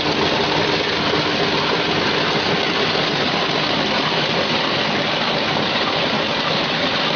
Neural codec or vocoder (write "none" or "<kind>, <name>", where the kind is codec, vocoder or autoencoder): none